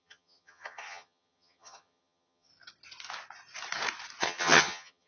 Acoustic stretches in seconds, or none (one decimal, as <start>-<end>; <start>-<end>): 2.5-4.2